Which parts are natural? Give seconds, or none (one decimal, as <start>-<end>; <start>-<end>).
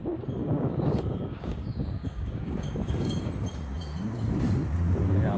0.0-0.4; 3.3-5.4